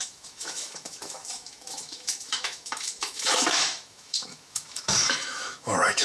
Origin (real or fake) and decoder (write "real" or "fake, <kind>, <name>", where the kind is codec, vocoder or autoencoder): fake, autoencoder, DAC-VAE